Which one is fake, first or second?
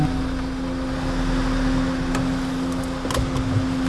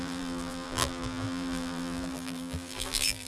second